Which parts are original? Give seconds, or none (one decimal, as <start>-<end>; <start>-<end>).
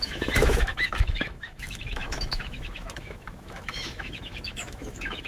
none